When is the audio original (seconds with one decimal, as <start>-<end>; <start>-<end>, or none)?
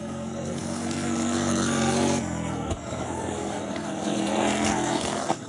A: none